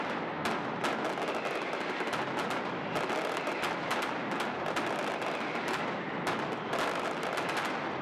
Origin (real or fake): real